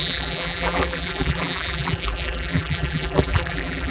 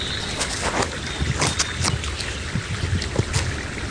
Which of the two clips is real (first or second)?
second